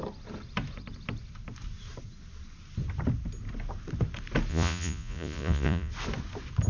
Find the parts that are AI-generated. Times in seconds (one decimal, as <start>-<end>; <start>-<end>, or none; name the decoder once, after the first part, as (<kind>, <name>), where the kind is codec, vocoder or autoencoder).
4.5-5.9 (vocoder, Vocos)

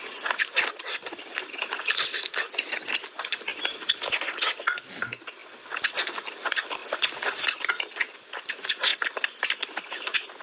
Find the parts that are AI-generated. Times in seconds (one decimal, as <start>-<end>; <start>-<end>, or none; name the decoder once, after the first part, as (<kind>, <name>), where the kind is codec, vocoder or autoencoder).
none

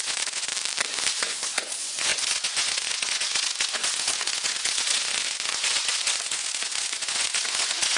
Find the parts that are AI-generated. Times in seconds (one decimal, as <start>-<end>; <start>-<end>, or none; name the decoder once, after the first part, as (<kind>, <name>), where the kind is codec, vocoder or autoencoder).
0.0-0.5 (vocoder, Vocos); 1.2-8.0

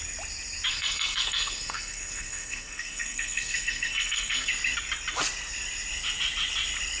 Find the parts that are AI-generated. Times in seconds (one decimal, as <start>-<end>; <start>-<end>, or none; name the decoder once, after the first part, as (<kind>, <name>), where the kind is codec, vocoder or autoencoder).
0.7-4.5 (codec, SNAC)

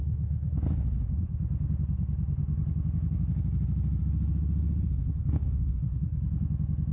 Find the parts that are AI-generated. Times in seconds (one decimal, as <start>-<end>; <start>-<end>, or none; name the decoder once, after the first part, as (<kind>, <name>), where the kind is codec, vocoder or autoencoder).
0.0-0.5 (codec, SNAC); 5.2-6.2

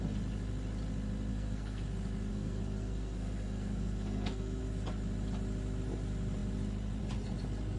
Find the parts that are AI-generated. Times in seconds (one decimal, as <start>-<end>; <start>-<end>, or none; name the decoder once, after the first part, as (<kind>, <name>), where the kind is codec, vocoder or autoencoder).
1.3-1.8 (codec, SNAC); 2.3-4.6